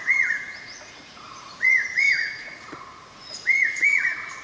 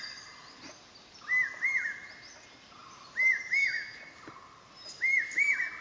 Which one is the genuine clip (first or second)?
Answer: second